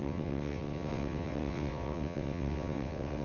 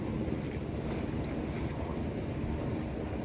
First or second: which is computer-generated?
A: first